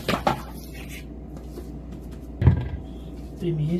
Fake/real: real